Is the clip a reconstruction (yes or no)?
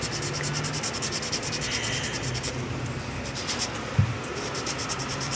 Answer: no